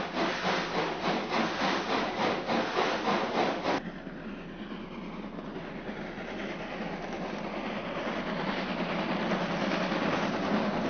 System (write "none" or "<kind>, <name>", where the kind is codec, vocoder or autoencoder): none